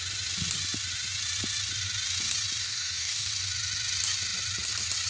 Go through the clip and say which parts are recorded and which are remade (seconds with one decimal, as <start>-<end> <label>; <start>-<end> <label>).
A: 0.0-2.6 recorded; 2.6-3.3 remade; 3.3-5.1 recorded